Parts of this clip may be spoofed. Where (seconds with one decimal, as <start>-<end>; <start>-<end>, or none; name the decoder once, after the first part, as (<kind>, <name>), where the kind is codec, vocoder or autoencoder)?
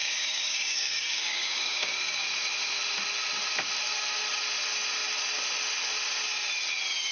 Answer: 0.0-2.2 (codec, DAC)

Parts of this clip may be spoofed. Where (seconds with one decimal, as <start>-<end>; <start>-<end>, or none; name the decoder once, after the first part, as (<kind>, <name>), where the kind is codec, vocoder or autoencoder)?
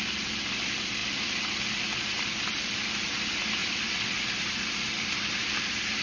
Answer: 1.0-2.9 (vocoder, BigVGAN v2); 3.6-6.0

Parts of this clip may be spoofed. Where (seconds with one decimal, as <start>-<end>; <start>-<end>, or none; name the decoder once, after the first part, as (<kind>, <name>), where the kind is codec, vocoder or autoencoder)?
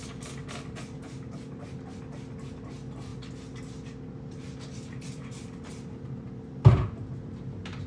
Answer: none